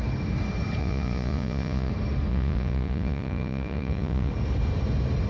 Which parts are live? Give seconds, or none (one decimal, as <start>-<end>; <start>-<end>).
0.0-0.8; 1.9-2.3; 4.3-5.3